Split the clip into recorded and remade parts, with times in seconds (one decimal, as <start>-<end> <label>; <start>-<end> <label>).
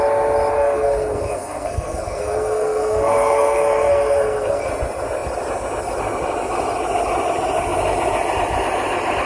0.0-0.5 recorded; 0.5-4.7 remade; 4.7-9.3 recorded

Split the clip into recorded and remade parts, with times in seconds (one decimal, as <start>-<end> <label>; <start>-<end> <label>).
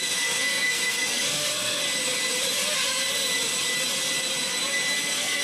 0.0-1.8 remade; 1.8-5.0 recorded; 5.0-5.4 remade